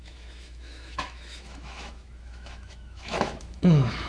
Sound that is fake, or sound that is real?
fake